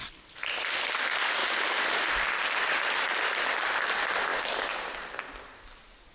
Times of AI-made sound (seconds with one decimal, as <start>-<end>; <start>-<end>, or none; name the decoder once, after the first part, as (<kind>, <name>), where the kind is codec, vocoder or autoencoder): 1.4-2.1 (vocoder, BigVGAN v2); 4.3-5.5